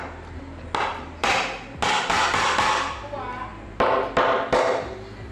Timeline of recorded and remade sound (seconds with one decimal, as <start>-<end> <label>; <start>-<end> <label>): 0.0-5.3 recorded